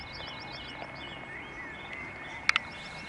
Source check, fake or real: real